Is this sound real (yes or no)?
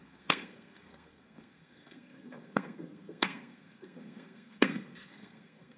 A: no